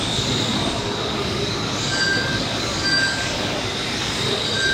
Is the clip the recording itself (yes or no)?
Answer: no